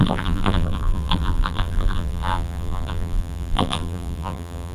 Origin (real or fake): fake